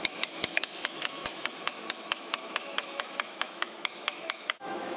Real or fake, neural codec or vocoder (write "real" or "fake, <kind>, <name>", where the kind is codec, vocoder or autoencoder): fake, autoencoder, DAC-VAE